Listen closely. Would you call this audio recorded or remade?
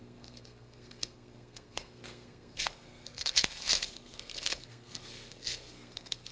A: remade